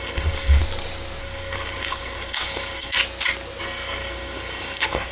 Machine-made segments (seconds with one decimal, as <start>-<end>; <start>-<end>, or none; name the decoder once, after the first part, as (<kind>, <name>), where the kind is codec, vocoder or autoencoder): 0.0-0.6 (codec, SNAC); 1.2-3.0; 3.6-5.1